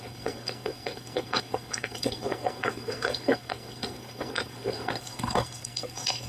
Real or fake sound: fake